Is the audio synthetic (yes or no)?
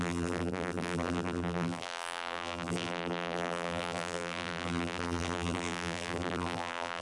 yes